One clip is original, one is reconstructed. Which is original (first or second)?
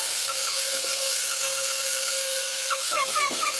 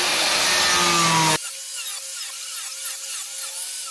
second